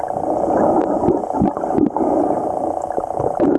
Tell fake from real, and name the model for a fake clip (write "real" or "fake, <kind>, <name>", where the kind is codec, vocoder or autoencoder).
real